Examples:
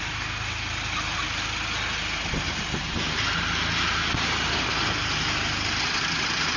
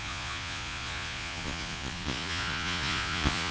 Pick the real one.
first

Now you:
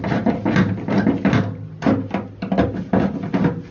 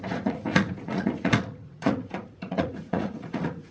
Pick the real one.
first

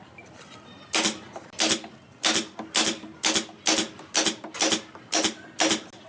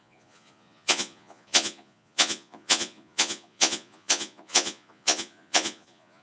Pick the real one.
first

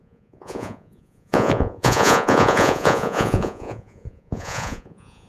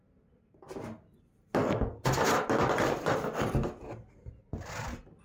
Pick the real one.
second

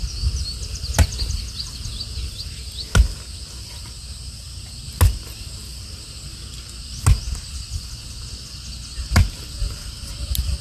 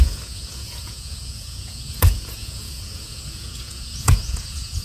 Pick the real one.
first